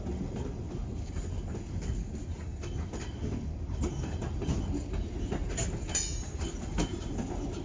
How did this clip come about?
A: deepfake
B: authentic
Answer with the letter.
B